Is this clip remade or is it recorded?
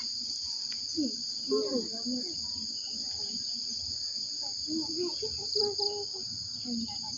recorded